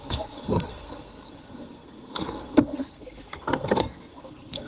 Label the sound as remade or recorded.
remade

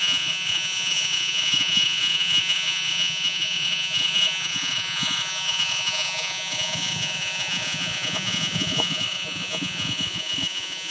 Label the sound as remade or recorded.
remade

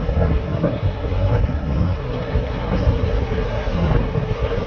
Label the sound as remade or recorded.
remade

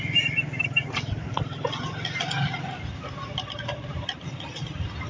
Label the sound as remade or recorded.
recorded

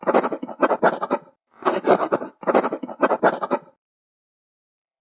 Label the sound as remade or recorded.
remade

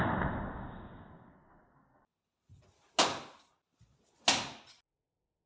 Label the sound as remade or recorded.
recorded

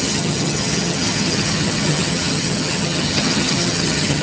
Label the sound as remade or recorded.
remade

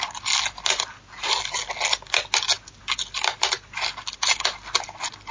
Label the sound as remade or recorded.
recorded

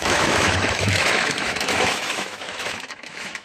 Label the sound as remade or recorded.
remade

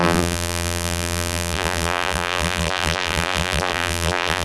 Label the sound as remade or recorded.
remade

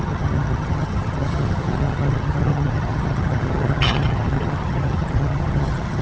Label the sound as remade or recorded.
remade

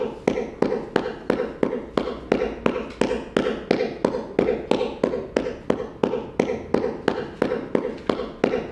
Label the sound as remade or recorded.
recorded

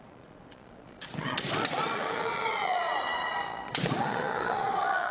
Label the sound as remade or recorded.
remade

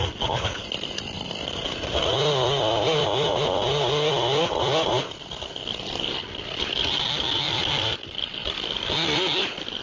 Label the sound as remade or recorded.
recorded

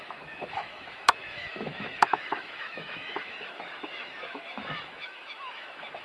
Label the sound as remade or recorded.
remade